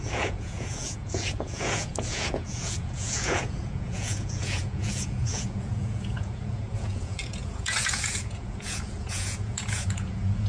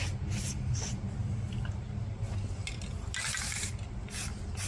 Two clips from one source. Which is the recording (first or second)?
second